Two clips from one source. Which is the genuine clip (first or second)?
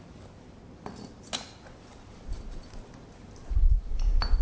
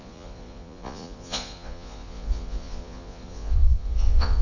first